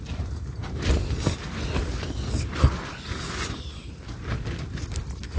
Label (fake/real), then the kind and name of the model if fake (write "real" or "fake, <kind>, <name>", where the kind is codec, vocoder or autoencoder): real